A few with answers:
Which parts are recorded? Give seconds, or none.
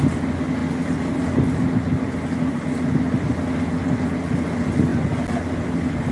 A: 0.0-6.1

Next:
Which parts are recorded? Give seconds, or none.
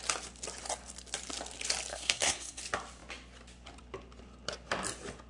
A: 0.0-1.9; 2.6-5.3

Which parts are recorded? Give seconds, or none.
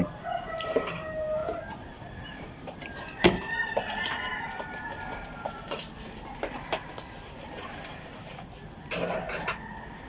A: none